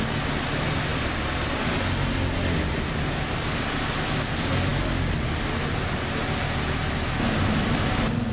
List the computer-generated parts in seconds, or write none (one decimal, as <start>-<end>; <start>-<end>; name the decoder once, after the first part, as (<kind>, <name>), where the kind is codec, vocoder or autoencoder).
none

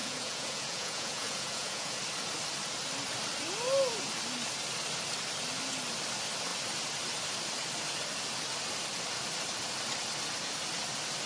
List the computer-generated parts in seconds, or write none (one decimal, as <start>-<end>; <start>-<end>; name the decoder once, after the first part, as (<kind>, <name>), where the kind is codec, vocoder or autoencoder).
0.0-2.0 (vocoder, Vocos)